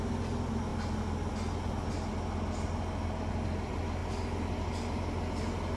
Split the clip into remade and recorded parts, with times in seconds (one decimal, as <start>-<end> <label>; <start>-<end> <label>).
0.0-5.8 recorded